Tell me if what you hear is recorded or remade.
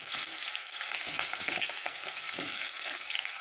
remade